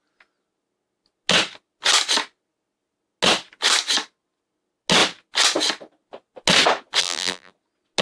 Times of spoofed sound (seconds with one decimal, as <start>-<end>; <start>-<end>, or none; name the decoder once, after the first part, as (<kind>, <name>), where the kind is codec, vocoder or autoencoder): 7.0-7.5 (vocoder, BigVGAN v2)